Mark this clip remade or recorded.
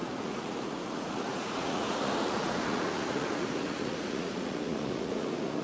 remade